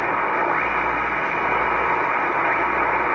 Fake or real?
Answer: real